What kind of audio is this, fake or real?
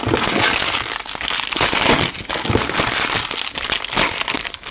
real